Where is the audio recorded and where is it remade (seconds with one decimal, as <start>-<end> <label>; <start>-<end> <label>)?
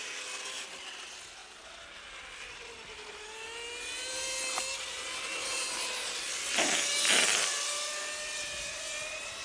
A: 0.0-9.4 recorded